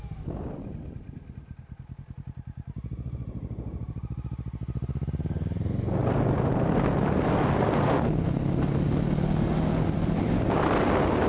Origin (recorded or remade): recorded